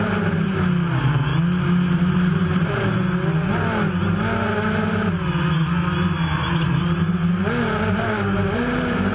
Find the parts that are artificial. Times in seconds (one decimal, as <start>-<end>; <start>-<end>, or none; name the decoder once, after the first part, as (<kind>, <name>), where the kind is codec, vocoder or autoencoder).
0.0-1.3 (vocoder, BigVGAN v2); 5.4-7.4; 8.5-9.1